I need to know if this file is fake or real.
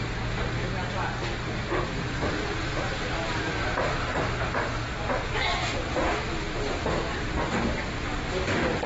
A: real